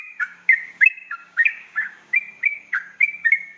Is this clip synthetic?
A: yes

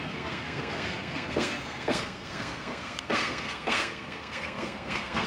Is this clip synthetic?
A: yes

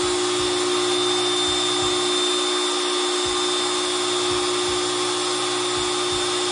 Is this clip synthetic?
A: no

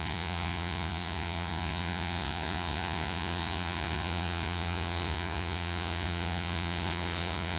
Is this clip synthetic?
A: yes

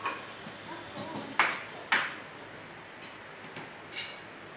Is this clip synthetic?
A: no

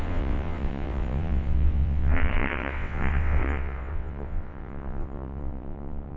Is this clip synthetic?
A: yes